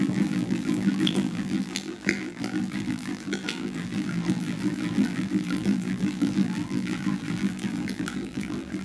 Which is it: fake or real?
fake